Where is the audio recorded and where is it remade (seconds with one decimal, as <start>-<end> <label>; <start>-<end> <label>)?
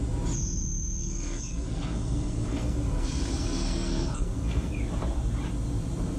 0.0-1.0 recorded; 1.0-4.7 remade; 4.7-6.2 recorded